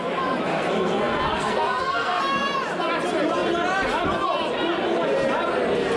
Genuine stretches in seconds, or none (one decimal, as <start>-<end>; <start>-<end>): 0.0-0.5; 2.2-6.0